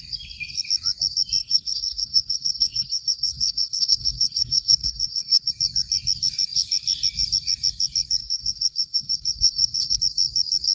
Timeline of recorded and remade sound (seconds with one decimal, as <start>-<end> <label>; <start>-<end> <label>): 0.0-1.4 recorded; 1.4-5.5 remade; 5.5-8.2 recorded; 8.2-10.0 remade; 10.0-10.7 recorded